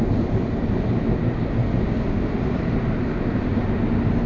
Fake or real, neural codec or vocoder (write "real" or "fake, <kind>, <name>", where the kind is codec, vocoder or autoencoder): real